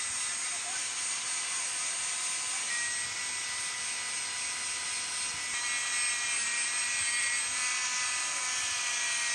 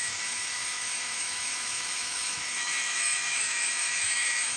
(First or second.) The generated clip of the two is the second